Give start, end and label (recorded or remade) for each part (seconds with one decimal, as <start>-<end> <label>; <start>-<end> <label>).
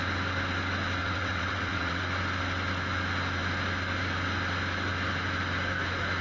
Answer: 0.0-1.0 recorded; 1.0-2.0 remade; 2.0-6.2 recorded